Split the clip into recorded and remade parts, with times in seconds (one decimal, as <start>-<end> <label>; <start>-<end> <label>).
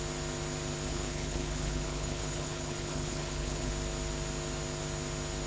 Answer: 0.0-0.9 recorded; 0.9-3.7 remade; 3.7-5.5 recorded